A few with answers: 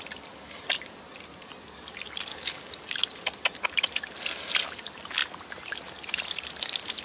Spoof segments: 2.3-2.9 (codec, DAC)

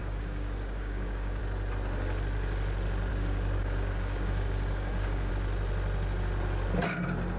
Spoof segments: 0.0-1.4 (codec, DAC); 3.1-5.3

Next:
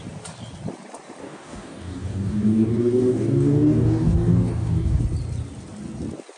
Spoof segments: 1.2-5.0 (codec, DAC)

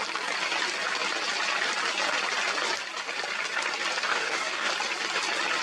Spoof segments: 4.1-4.7 (codec, DAC)

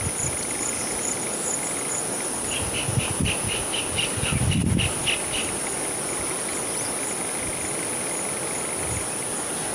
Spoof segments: none